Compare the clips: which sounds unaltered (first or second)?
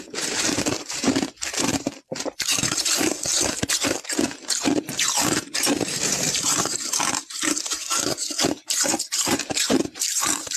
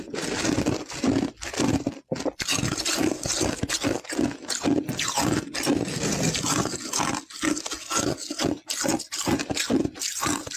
second